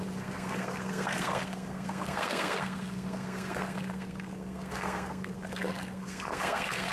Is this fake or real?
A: fake